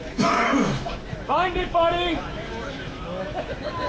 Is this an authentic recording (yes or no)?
no